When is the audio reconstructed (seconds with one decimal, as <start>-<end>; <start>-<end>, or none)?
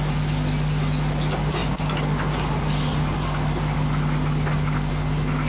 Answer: none